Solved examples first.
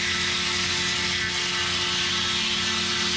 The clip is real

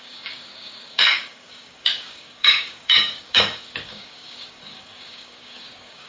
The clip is fake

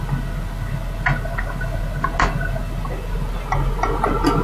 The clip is real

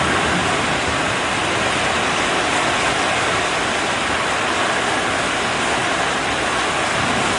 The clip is real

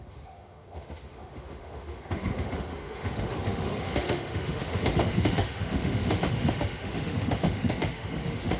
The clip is fake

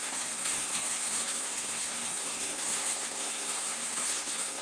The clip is fake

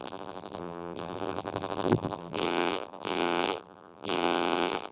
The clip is fake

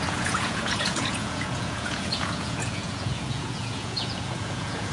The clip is fake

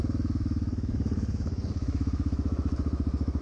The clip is fake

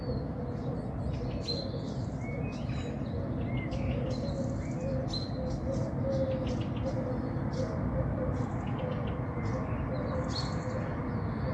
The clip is real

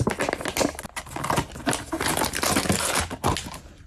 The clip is real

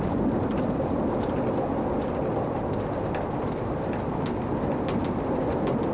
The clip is real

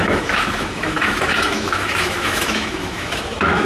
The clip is fake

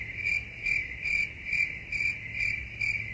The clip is real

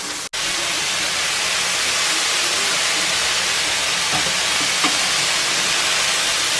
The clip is real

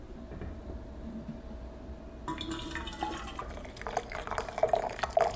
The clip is real